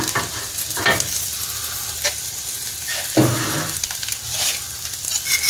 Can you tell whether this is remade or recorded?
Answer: remade